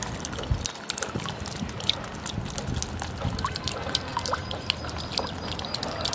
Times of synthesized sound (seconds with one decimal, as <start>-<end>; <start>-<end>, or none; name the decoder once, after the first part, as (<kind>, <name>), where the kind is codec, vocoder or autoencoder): none